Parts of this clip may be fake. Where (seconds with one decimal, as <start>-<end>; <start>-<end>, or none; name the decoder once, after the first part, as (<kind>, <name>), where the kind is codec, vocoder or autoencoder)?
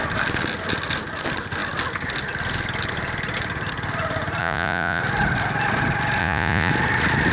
4.4-5.0 (vocoder, Vocos); 6.2-6.7